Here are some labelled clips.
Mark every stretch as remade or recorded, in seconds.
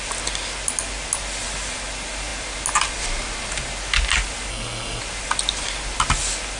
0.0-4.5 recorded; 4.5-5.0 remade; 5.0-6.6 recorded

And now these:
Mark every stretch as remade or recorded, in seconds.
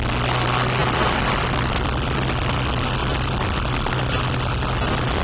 0.0-5.2 recorded